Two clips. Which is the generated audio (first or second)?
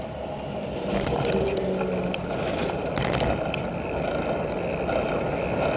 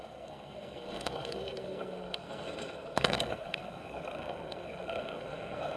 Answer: second